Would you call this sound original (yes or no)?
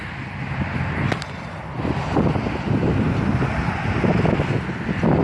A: yes